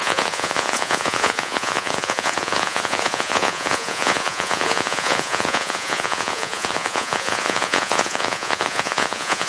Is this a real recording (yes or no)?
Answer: no